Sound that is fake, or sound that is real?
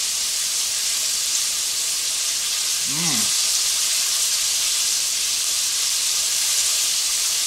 fake